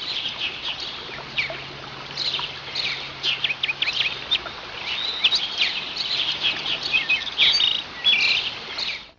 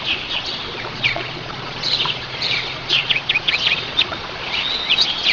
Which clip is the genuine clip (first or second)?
first